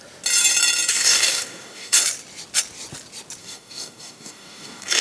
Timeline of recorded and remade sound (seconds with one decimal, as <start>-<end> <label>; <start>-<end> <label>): 0.0-0.9 recorded; 0.9-2.0 remade; 2.0-3.4 recorded; 3.4-5.0 remade